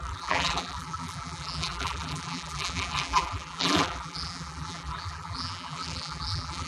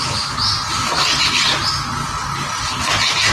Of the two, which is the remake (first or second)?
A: first